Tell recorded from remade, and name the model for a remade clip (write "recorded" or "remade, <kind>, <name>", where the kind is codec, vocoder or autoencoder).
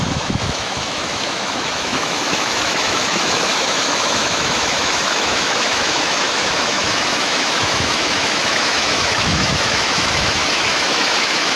remade, autoencoder, DAC-VAE